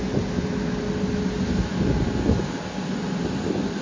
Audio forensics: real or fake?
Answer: real